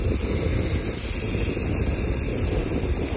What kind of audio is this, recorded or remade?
recorded